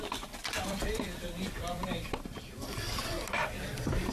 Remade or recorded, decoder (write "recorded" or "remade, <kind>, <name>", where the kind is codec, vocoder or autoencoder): remade, vocoder, BigVGAN v2